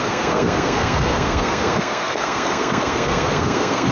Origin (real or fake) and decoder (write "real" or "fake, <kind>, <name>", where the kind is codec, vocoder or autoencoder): fake, codec, SNAC